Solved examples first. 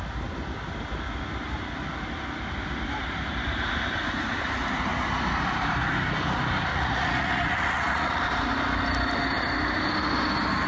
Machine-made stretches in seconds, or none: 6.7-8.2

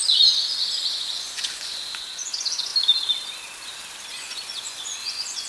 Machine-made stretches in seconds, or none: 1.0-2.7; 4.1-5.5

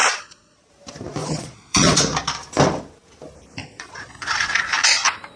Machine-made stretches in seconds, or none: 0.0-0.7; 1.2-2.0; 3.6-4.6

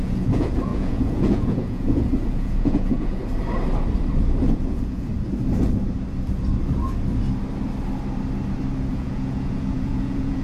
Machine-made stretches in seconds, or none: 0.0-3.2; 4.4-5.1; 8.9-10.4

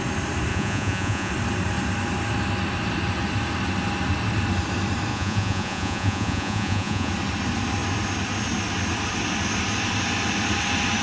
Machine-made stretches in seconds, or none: 0.5-1.3; 5.1-7.1

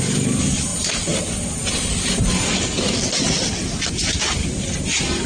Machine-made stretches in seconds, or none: none

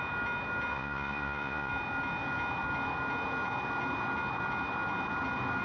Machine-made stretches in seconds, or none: 0.7-1.7